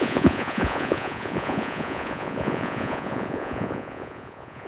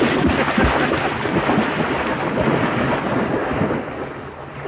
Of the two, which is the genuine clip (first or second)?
second